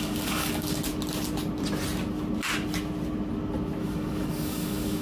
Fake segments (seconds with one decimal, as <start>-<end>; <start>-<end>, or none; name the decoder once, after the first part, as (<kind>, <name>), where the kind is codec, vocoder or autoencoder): 0.0-0.8 (codec, DAC); 3.8-5.0